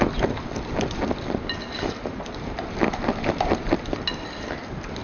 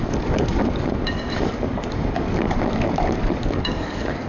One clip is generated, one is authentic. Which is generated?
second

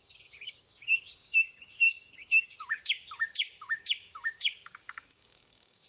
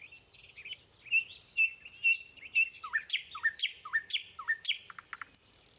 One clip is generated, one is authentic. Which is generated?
first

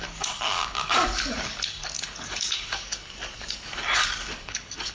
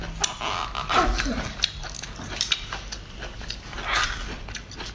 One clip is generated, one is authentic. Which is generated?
first